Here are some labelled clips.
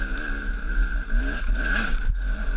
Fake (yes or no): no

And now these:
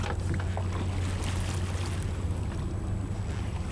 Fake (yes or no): no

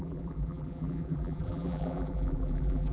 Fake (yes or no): yes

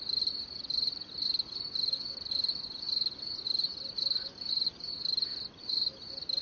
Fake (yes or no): no